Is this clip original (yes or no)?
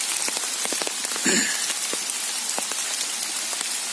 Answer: yes